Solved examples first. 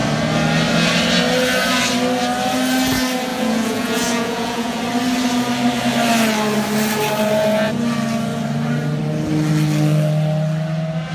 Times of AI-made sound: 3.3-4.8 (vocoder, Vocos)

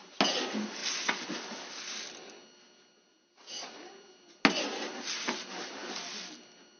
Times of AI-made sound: none

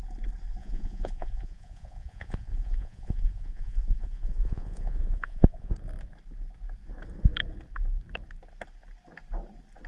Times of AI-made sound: 0.6-5.7 (vocoder, Vocos)

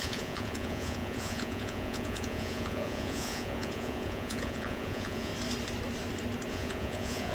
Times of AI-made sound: 0.0-5.3 (vocoder, Vocos); 6.5-7.3

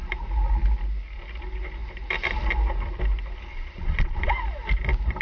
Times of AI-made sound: 3.5-4.3 (vocoder, Vocos)

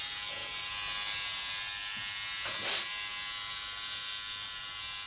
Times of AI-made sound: none

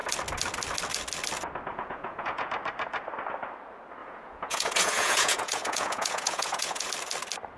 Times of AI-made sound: 1.7-2.5 (vocoder, Vocos); 4.0-6.9